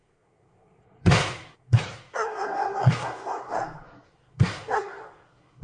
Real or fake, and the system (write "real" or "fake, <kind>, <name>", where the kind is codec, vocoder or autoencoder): fake, codec, SNAC